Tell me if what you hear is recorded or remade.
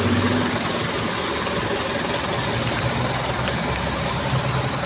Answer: recorded